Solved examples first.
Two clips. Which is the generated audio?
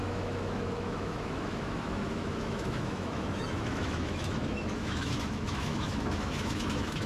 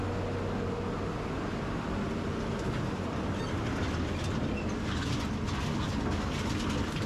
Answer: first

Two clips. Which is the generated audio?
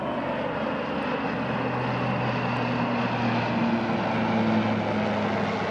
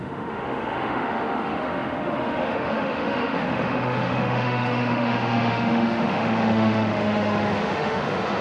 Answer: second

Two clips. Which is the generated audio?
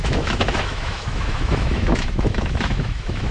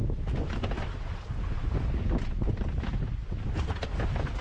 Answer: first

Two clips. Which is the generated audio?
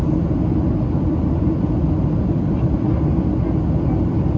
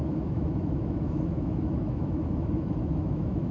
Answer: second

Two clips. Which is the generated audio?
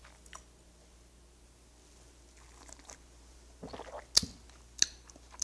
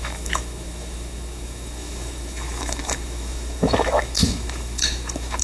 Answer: second